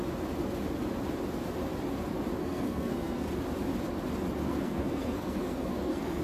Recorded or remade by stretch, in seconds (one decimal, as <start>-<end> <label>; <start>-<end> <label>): 0.0-2.4 recorded; 2.4-3.3 remade; 3.3-4.4 recorded; 4.4-6.2 remade